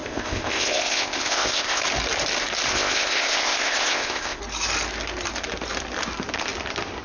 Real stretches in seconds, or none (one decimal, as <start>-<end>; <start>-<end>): 1.8-2.7; 4.4-7.0

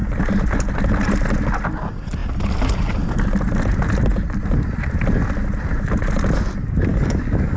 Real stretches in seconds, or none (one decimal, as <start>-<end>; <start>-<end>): 0.0-6.9